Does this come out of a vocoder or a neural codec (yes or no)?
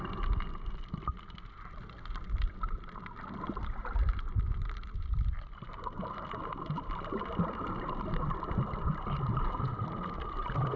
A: yes